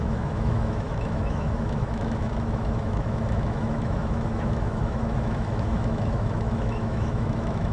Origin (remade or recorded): remade